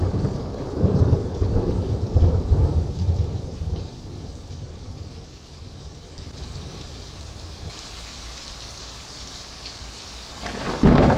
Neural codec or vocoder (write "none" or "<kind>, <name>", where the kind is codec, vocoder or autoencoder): codec, DAC